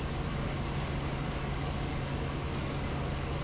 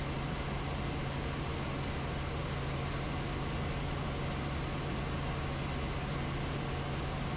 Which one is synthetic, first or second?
first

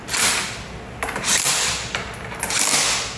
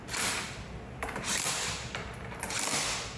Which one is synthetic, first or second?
second